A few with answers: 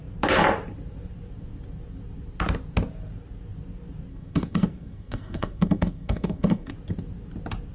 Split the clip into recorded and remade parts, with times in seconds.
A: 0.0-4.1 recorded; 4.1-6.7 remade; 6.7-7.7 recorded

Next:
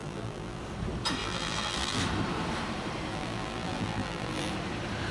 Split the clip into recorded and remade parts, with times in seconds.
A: 0.0-0.6 remade; 0.6-1.2 recorded; 1.2-2.0 remade; 2.0-3.1 recorded; 3.1-4.5 remade; 4.5-5.1 recorded

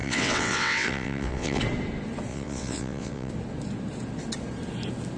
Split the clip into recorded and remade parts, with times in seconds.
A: 0.0-1.6 remade; 1.6-2.3 recorded; 2.3-3.3 remade; 3.3-5.2 recorded

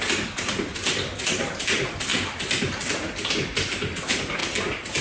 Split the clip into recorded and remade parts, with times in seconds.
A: 0.0-5.0 recorded

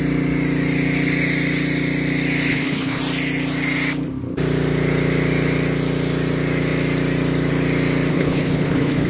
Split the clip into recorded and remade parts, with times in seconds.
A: 0.0-2.5 recorded; 2.5-3.0 remade; 3.0-8.1 recorded; 8.1-9.1 remade

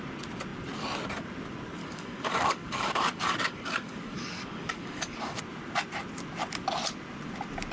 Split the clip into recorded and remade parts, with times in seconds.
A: 0.0-1.8 recorded; 1.8-5.4 remade; 5.4-7.7 recorded